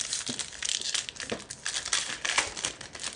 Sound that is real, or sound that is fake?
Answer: real